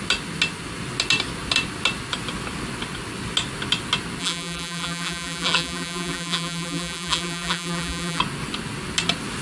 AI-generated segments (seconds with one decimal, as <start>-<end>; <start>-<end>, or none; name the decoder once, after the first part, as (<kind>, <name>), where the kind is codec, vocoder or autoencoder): 4.2-8.2 (vocoder, BigVGAN v2)

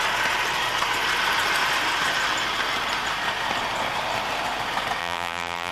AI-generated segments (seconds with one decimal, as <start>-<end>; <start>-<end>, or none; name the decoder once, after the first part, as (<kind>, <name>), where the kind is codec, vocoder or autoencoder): 5.0-5.7 (vocoder, BigVGAN v2)

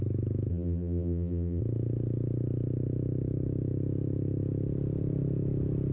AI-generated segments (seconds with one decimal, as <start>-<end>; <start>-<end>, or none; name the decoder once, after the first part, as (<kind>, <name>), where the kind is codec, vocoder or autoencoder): 0.5-1.6 (vocoder, BigVGAN v2)

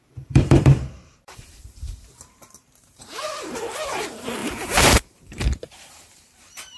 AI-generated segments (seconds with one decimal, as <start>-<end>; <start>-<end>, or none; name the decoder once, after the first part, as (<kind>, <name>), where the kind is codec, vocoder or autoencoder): 0.0-6.8 (vocoder, BigVGAN v2)

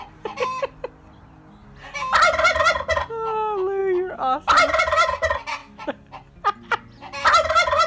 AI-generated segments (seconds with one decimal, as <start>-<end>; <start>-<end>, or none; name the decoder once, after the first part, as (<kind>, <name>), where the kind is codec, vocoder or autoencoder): none

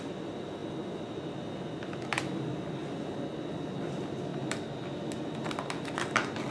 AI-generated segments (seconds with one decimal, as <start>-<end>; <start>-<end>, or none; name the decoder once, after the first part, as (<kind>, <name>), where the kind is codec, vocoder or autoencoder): 0.0-4.3 (vocoder, BigVGAN v2)

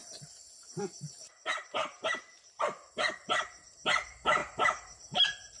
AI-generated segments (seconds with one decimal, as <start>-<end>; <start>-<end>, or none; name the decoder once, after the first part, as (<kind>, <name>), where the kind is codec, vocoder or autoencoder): 0.0-3.1 (vocoder, BigVGAN v2); 4.4-5.6